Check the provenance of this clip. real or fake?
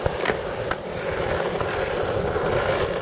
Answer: real